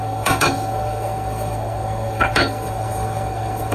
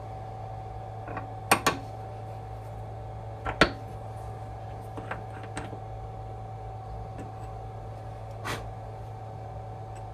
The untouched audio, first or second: second